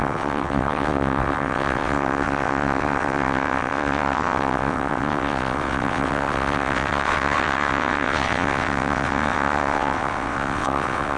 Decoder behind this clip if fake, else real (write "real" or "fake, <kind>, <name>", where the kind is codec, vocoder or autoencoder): fake, vocoder, WaveNeXt